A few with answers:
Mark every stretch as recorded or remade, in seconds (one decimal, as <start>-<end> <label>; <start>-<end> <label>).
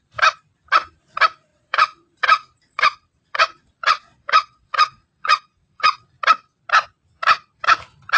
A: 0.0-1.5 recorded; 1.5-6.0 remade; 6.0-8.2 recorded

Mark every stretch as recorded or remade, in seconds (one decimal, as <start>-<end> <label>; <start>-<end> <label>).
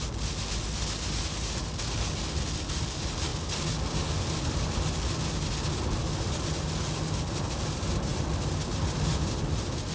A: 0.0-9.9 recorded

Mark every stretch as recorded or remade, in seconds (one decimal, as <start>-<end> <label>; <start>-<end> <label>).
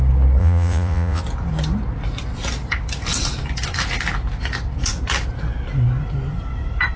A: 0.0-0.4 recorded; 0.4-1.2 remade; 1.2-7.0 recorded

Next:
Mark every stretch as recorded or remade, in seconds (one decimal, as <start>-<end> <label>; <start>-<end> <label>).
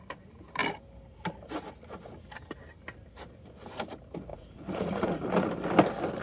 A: 0.0-4.3 recorded; 4.3-5.5 remade; 5.5-6.2 recorded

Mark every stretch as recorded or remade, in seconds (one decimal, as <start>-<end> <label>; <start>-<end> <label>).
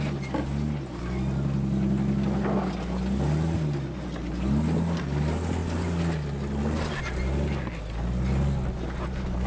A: 0.0-9.5 recorded